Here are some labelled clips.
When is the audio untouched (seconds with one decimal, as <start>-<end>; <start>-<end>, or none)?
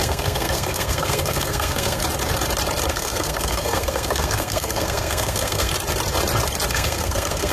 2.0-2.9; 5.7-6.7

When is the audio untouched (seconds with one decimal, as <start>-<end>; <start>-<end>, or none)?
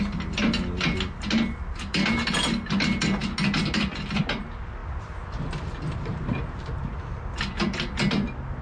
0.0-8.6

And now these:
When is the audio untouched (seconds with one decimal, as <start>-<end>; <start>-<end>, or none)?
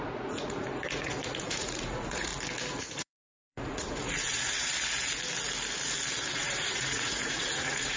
2.3-2.8; 4.7-6.3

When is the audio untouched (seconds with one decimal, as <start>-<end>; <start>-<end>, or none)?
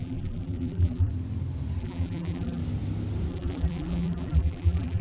1.1-1.8; 2.6-3.3